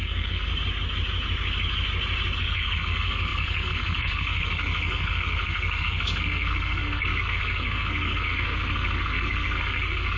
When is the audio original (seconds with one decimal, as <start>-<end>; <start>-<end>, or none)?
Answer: 0.5-2.4